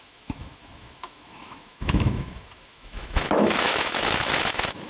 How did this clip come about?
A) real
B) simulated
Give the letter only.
B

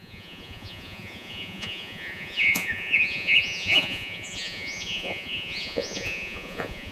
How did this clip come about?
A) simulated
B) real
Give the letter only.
A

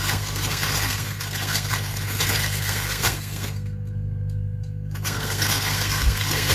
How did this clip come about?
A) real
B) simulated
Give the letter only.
B